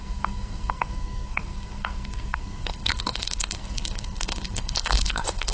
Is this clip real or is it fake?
fake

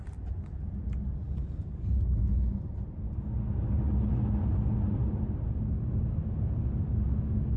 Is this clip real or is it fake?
real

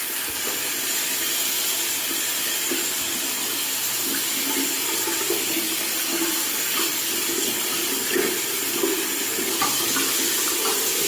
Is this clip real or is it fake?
real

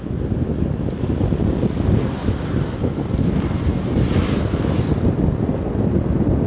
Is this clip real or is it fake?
real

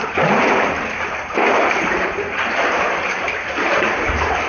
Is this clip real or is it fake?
fake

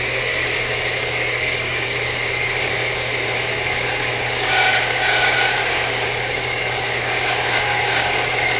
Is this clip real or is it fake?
fake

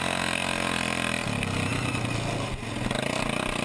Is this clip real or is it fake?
real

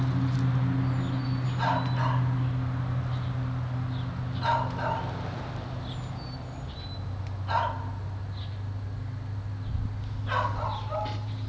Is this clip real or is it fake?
real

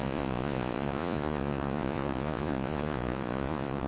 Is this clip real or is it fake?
fake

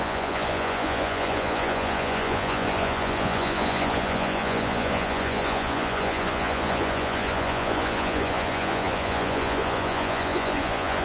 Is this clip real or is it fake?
fake